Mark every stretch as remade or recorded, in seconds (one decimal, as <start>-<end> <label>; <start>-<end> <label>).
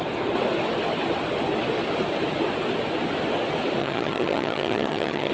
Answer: 0.0-3.8 recorded; 3.8-5.3 remade